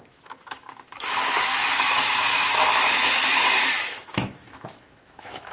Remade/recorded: remade